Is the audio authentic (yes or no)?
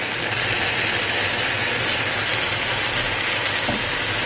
yes